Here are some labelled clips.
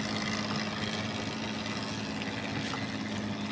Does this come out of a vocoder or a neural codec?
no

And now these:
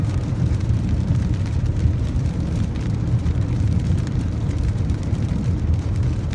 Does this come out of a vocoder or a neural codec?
yes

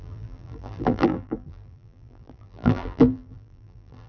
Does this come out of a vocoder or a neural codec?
yes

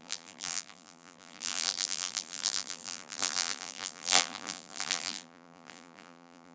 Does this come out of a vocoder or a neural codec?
yes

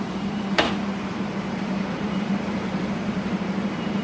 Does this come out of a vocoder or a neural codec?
yes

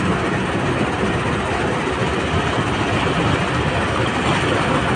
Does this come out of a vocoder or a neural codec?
no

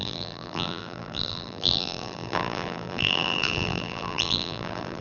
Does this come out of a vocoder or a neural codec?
yes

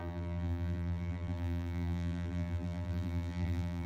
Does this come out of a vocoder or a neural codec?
yes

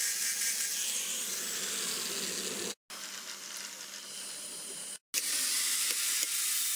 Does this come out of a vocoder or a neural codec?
no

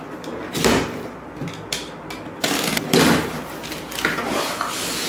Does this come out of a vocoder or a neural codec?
no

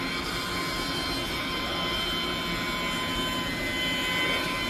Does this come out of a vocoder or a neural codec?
no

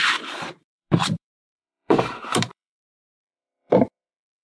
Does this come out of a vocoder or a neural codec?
yes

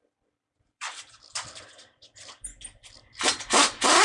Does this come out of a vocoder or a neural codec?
yes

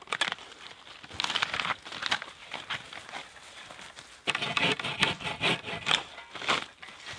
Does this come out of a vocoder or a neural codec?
no